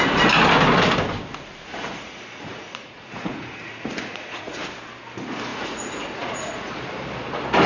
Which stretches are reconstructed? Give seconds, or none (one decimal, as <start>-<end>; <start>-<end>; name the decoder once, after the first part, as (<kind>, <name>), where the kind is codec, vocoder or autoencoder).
1.7-4.6 (vocoder, Vocos); 5.5-6.7